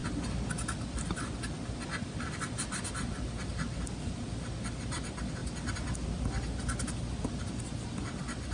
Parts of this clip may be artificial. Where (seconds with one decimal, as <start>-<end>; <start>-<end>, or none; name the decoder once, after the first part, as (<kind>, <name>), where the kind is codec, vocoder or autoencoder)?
none